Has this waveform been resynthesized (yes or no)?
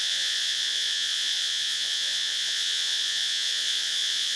yes